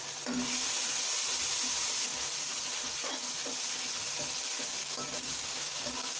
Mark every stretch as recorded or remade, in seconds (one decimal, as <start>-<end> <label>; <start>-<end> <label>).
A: 0.0-4.8 recorded; 4.8-6.2 remade